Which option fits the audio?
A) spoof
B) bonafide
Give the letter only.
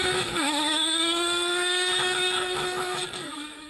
A